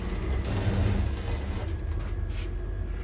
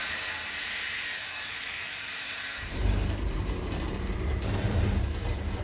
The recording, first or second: first